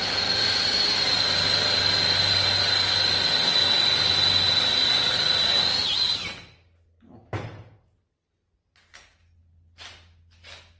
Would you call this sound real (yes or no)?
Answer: yes